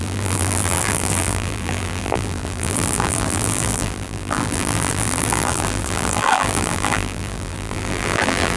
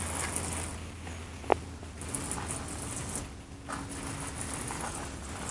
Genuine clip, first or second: second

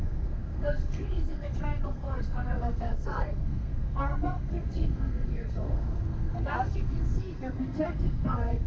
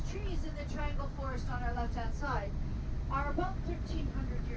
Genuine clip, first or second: second